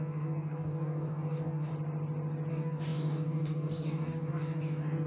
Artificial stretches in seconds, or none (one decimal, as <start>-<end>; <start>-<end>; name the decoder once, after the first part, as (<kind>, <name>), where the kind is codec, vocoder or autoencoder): 0.0-1.7 (codec, DAC); 2.5-5.1